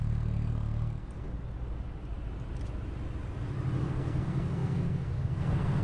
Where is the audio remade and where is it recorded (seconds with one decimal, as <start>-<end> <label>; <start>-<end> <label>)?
0.0-1.3 remade; 1.3-3.8 recorded; 3.8-5.8 remade

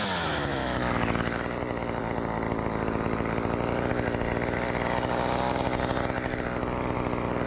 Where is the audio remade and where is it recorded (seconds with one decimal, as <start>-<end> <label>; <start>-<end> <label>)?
0.0-7.5 recorded

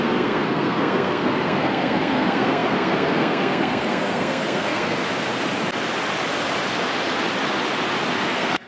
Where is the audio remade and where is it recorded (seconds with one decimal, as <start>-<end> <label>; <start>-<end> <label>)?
0.0-5.0 remade; 5.0-8.1 recorded; 8.1-8.7 remade